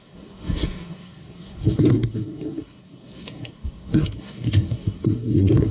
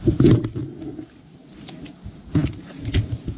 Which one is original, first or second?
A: second